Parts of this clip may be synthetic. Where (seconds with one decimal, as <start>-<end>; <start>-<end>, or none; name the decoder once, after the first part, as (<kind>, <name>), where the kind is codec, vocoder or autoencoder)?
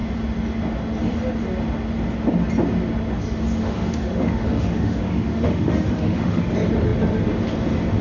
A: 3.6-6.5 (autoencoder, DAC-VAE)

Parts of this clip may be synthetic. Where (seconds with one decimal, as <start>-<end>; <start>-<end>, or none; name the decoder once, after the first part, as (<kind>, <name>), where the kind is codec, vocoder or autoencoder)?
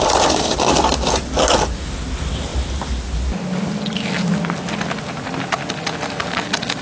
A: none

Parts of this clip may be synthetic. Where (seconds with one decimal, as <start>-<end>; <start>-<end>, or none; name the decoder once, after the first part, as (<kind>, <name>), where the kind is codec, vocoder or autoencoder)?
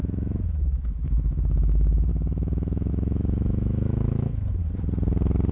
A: 0.0-4.6 (autoencoder, DAC-VAE)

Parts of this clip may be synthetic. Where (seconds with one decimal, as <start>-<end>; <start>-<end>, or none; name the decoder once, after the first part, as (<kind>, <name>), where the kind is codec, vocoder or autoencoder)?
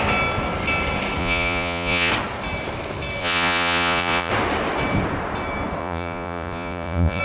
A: 1.2-2.1 (vocoder, Vocos); 3.2-4.3; 5.8-7.2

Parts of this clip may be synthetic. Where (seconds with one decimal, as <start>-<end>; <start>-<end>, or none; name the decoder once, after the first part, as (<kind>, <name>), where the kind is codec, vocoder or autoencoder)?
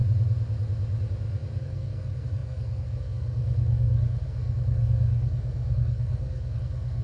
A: 1.6-7.0 (codec, SNAC)